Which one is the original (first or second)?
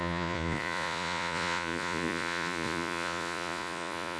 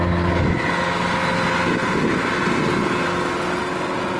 second